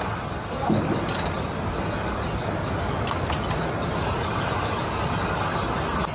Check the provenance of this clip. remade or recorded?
recorded